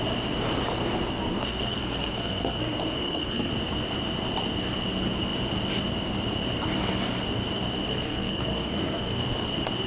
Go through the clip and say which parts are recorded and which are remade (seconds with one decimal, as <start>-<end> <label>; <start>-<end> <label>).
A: 0.0-1.3 recorded; 1.3-3.5 remade; 3.5-7.9 recorded; 7.9-9.5 remade; 9.5-9.9 recorded